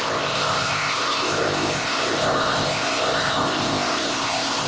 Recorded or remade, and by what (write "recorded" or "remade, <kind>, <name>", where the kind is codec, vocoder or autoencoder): remade, codec, ZipCodec